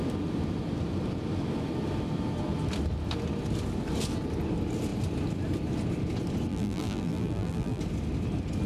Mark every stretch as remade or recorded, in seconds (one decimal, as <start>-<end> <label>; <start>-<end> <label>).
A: 0.0-6.5 recorded; 6.5-7.8 remade; 7.8-8.7 recorded